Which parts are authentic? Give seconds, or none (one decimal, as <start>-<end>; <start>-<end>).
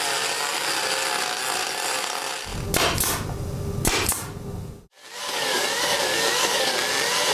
0.0-5.0; 6.7-7.3